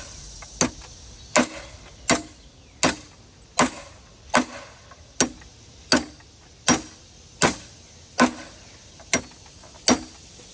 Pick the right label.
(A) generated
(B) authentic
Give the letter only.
B